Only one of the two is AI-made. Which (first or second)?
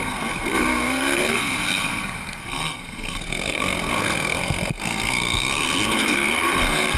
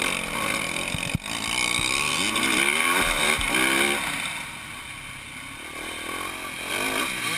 first